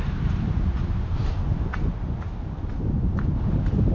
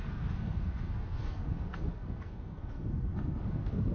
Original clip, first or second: first